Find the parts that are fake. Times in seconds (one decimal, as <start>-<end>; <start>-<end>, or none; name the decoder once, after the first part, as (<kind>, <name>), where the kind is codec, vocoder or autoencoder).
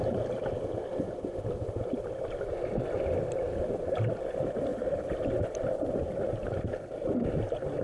none